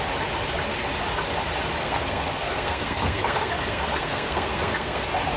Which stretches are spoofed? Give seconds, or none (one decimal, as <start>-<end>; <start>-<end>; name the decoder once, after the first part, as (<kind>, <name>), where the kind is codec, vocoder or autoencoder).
1.8-5.0 (codec, SNAC)